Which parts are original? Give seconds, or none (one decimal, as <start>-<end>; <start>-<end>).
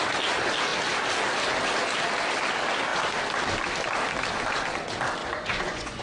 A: 0.0-5.2